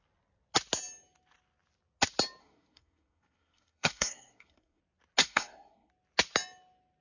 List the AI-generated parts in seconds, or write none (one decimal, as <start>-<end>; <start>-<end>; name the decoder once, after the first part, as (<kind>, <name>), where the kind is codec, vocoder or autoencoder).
2.4-4.8 (codec, SNAC); 5.2-5.9